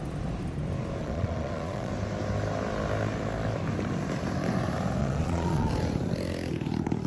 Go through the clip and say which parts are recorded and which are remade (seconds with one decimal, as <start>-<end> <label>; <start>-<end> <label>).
0.0-1.0 recorded; 1.0-1.9 remade; 1.9-5.0 recorded; 5.0-5.7 remade; 5.7-7.1 recorded